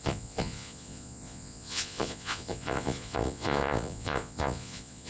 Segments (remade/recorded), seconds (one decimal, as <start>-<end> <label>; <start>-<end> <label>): 0.0-5.1 remade

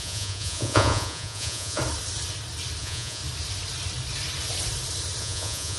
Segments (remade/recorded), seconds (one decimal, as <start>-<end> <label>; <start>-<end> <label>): 0.0-1.8 remade; 1.8-2.8 recorded; 2.8-3.2 remade; 3.2-5.2 recorded; 5.2-5.8 remade

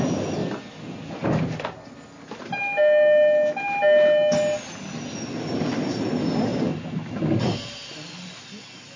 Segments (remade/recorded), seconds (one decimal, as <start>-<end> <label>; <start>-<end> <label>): 0.0-9.0 recorded

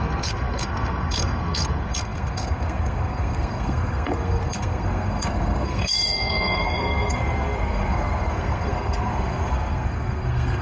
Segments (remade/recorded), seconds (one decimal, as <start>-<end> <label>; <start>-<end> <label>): 0.0-10.6 remade

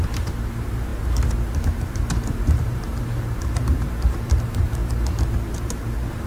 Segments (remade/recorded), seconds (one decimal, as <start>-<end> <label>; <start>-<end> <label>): 0.0-6.3 remade

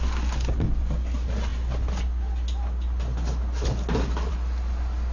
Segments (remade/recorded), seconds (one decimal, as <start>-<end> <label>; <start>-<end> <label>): 0.0-5.1 recorded

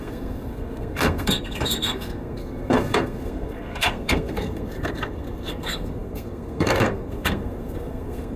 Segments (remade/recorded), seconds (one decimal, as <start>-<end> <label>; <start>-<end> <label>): 0.0-8.4 remade

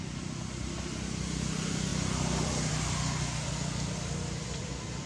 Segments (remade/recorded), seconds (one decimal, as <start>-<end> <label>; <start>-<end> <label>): 0.0-5.1 recorded